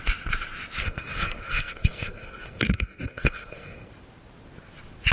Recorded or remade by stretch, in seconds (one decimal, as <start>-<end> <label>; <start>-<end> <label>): 0.0-0.8 recorded; 0.8-3.9 remade; 3.9-5.1 recorded